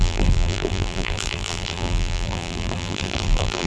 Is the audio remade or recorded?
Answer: remade